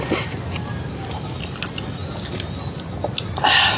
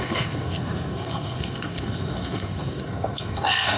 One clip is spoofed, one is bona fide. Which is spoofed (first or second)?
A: second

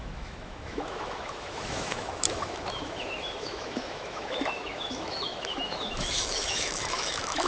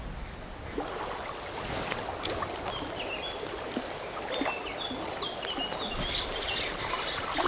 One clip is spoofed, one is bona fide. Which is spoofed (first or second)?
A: first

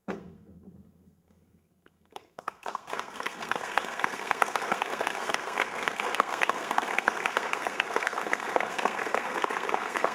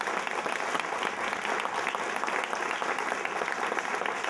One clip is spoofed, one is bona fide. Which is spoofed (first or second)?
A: first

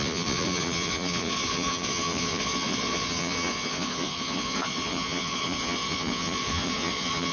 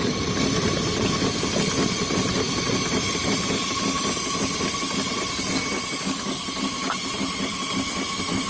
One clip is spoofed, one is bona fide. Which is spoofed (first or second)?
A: first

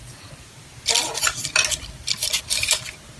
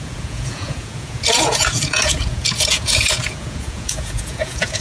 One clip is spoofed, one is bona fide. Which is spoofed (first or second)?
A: second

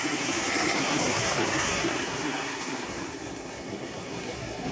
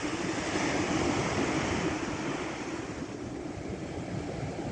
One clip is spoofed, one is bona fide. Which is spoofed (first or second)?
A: first